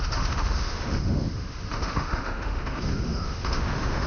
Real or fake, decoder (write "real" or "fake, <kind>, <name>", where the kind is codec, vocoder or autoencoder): fake, autoencoder, DAC-VAE